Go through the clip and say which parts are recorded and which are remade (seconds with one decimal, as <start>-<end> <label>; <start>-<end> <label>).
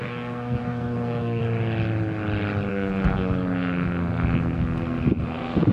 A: 0.0-1.4 remade; 1.4-2.7 recorded; 2.7-5.7 remade